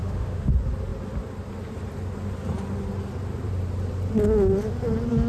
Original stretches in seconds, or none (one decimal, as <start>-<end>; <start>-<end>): 0.5-5.3